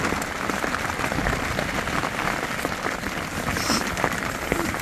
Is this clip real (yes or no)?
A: yes